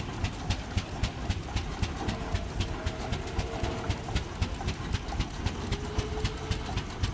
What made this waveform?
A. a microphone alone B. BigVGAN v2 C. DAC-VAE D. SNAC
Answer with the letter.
A